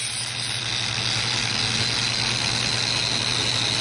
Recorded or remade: recorded